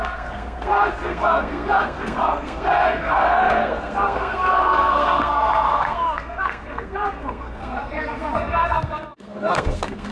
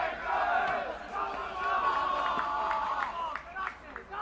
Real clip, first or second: second